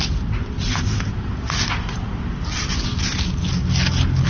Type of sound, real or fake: real